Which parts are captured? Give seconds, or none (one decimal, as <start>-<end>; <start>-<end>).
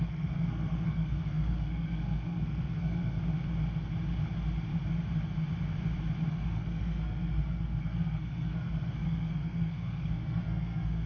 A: 3.2-6.3